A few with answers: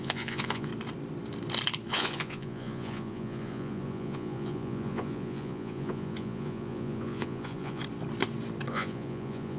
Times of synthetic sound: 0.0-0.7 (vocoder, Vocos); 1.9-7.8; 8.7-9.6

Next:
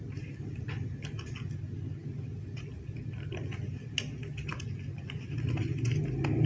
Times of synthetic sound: none

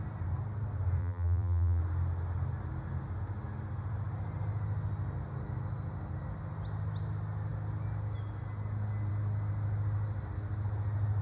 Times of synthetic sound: 1.0-1.8 (vocoder, BigVGAN v2)

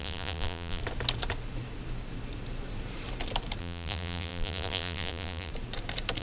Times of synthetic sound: 0.0-0.8 (vocoder, BigVGAN v2); 3.6-5.5

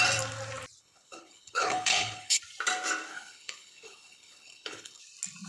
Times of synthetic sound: 0.8-2.4 (codec, HILCodec); 3.1-5.0

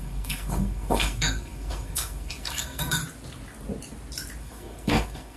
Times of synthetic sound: 0.0-3.0 (codec, SNAC); 4.4-5.4

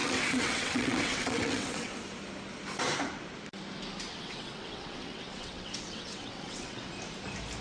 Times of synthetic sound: 0.0-1.9 (vocoder, WaveNeXt); 4.1-6.9

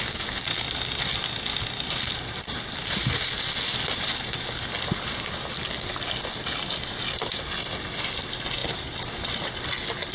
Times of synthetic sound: none